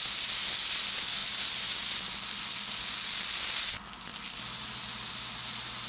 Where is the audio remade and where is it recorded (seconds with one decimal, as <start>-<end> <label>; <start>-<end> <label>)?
0.0-5.9 recorded